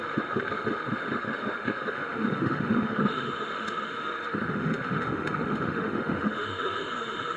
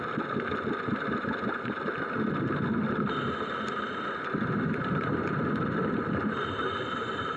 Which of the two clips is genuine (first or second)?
second